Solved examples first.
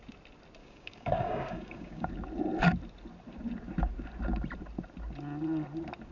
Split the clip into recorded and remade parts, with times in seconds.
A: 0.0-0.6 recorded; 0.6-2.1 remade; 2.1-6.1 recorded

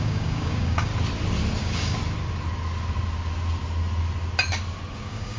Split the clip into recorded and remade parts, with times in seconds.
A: 0.0-0.9 remade; 0.9-1.6 recorded; 1.6-2.0 remade; 2.0-4.9 recorded; 4.9-5.4 remade

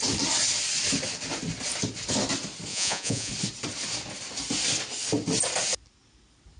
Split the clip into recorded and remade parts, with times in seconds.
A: 0.0-2.7 recorded; 2.7-3.3 remade; 3.3-6.6 recorded